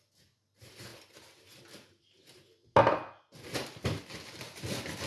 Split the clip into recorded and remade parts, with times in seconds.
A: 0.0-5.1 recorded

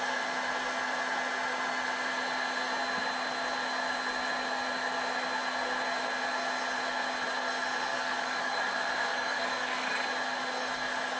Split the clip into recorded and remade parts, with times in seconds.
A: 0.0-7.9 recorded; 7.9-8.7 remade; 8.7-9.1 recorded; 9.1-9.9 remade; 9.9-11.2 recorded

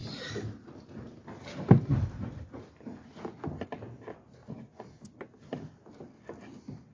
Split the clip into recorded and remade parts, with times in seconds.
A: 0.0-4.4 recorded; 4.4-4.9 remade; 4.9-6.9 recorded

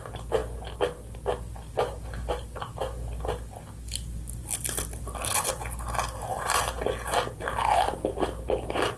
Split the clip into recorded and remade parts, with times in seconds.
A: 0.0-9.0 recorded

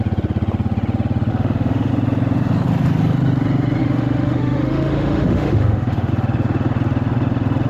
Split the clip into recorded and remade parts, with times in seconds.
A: 0.0-1.3 recorded; 1.3-1.9 remade; 1.9-3.8 recorded; 3.8-6.1 remade; 6.1-7.7 recorded

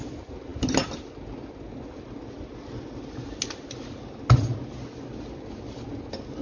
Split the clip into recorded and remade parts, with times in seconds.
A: 0.0-6.4 recorded

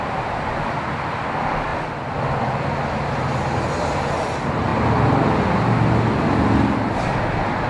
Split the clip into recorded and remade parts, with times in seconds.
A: 0.0-7.7 recorded

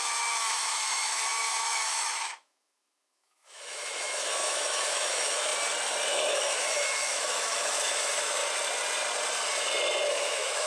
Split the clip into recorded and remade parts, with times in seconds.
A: 0.0-5.5 remade; 5.5-6.1 recorded; 6.1-8.4 remade; 8.4-10.1 recorded; 10.1-10.7 remade